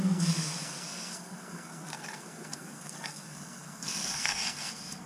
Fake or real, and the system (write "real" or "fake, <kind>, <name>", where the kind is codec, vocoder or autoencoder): fake, codec, SNAC